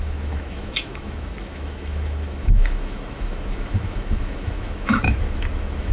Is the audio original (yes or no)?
no